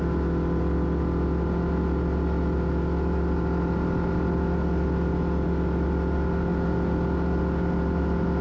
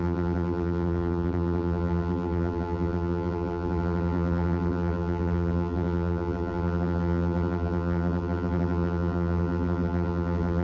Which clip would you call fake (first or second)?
second